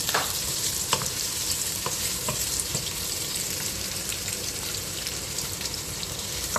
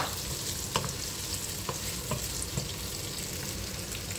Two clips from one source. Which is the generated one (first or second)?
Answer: first